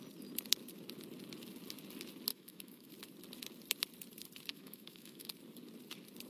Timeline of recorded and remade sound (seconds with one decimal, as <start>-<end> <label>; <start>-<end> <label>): 0.0-2.3 recorded; 2.3-2.9 remade; 2.9-4.5 recorded; 4.5-5.3 remade; 5.3-6.3 recorded